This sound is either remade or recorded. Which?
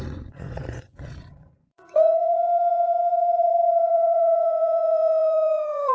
remade